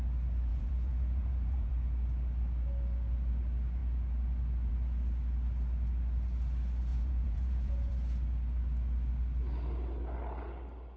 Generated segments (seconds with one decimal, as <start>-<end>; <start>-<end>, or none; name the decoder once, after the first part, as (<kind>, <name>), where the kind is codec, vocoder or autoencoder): 0.5-1.7 (vocoder, Vocos); 6.9-7.9